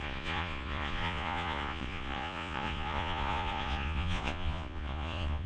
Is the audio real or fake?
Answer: fake